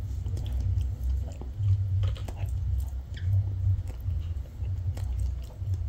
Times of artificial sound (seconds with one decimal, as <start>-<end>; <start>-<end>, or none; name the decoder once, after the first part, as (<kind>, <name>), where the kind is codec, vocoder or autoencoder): none